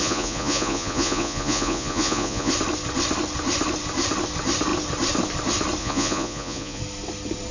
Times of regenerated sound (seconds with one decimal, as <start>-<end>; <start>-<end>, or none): 0.0-2.5; 5.8-6.8